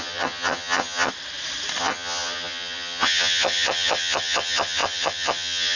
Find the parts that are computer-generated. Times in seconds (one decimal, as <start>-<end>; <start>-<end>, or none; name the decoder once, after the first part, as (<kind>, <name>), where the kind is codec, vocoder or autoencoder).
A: 0.0-1.1 (vocoder, HiFi-GAN); 1.8-5.8